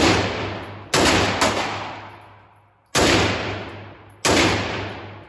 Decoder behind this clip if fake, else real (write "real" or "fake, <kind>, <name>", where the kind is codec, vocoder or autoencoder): real